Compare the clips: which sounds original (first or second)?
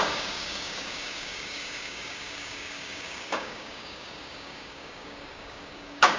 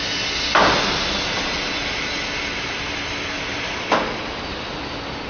second